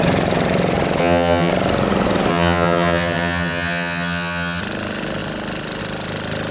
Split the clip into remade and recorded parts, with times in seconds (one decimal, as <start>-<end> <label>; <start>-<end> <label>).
0.0-1.0 recorded; 1.0-1.5 remade; 1.5-2.3 recorded; 2.3-4.6 remade; 4.6-6.5 recorded